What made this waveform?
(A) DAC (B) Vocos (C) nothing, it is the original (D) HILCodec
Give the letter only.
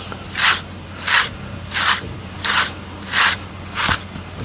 C